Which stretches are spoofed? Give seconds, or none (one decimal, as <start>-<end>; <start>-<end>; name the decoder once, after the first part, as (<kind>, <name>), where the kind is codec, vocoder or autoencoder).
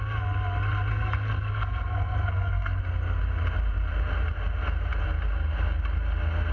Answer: 0.9-2.8 (codec, SNAC)